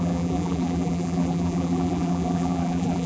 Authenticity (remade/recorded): remade